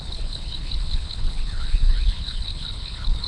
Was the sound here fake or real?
fake